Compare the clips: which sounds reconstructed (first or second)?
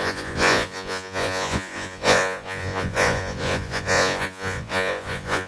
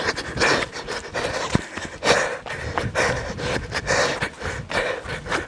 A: first